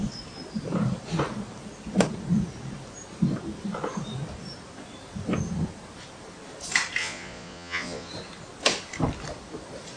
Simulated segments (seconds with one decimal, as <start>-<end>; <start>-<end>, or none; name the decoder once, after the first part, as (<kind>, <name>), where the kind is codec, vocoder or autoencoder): 7.0-8.1 (vocoder, Vocos)